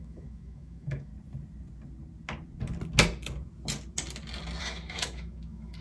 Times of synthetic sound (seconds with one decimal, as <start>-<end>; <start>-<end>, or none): 0.0-1.1; 4.6-5.8